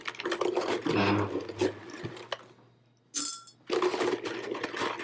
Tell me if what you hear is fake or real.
real